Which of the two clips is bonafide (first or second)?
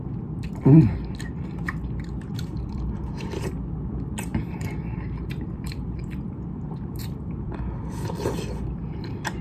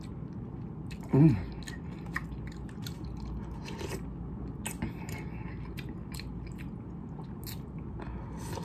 second